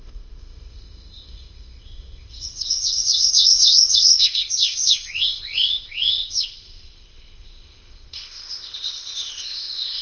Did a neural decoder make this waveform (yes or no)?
yes